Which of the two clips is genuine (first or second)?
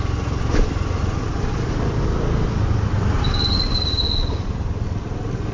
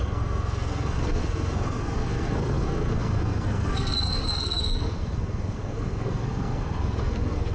first